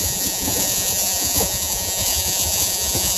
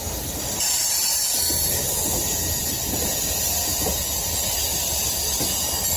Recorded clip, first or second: second